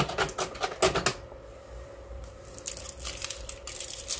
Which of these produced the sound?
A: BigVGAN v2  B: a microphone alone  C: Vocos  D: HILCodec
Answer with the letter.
B